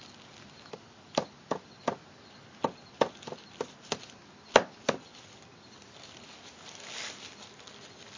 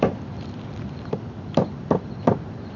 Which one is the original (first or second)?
first